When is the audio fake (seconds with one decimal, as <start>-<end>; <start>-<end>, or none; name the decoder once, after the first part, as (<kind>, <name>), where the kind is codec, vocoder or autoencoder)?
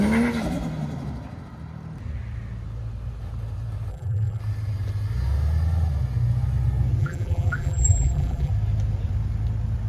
3.9-4.4 (vocoder, BigVGAN v2); 7.0-8.5